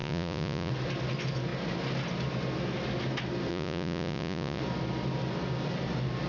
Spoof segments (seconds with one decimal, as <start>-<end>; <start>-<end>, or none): 0.0-0.7; 3.5-4.6